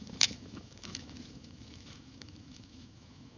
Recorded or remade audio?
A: remade